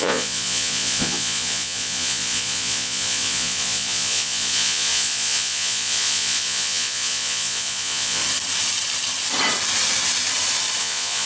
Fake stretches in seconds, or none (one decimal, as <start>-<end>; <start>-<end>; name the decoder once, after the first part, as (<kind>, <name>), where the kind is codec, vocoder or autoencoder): 0.0-8.2 (vocoder, Vocos); 10.8-11.3